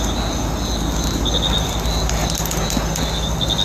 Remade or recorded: recorded